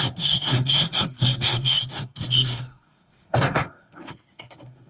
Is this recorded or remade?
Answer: remade